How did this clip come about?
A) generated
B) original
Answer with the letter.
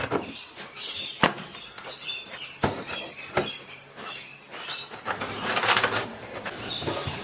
A